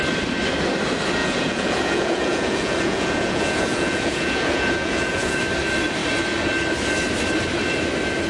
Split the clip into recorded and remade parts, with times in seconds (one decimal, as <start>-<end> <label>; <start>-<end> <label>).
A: 0.0-1.2 recorded; 1.2-5.4 remade; 5.4-8.3 recorded

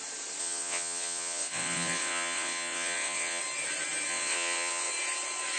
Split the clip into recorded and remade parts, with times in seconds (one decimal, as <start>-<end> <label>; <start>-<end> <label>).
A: 0.0-0.4 recorded; 0.4-3.4 remade; 3.4-4.1 recorded; 4.1-4.9 remade; 4.9-5.6 recorded

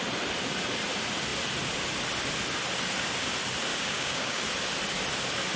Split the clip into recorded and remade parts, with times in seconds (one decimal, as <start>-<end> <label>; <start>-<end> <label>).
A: 0.0-3.7 recorded; 3.7-4.4 remade; 4.4-5.6 recorded

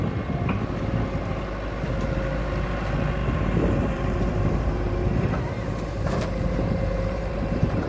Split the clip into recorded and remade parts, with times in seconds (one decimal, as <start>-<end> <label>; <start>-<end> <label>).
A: 0.0-3.2 recorded; 3.2-7.9 remade

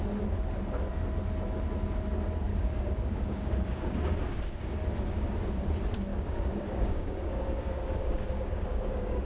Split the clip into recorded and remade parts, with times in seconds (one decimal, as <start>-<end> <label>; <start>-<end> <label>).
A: 0.0-2.5 recorded; 2.5-4.6 remade; 4.6-6.1 recorded; 6.1-9.3 remade

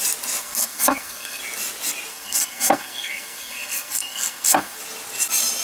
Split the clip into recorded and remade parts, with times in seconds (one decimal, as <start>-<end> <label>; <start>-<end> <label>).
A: 0.0-0.4 recorded; 0.4-1.4 remade; 1.4-2.1 recorded; 2.1-4.8 remade; 4.8-5.6 recorded

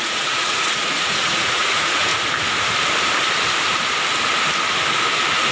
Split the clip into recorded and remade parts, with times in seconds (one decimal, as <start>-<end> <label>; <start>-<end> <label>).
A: 0.0-2.1 remade; 2.1-5.5 recorded

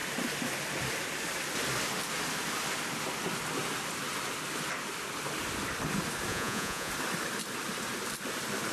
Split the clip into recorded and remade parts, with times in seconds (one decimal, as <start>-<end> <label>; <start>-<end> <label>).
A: 0.0-6.3 recorded; 6.3-6.9 remade; 6.9-8.7 recorded